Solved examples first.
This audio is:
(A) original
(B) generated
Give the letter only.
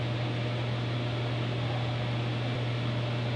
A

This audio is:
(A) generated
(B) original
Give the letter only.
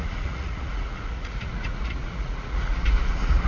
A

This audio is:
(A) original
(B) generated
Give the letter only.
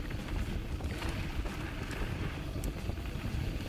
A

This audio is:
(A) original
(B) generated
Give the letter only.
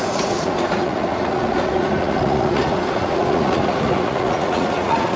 B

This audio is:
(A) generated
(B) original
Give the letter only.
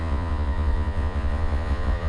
A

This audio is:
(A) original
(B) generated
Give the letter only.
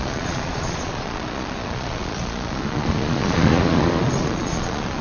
B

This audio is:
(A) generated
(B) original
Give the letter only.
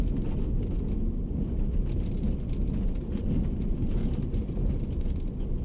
B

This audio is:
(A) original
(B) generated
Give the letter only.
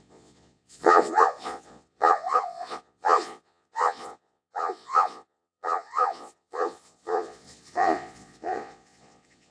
B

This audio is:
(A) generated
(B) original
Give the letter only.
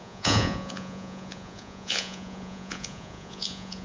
A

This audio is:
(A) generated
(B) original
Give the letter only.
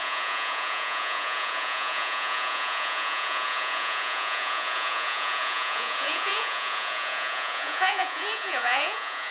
A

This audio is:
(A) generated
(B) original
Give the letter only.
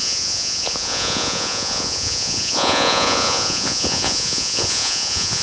A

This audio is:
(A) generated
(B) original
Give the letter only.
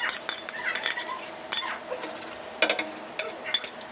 B